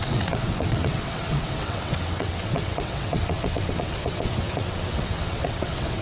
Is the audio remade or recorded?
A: remade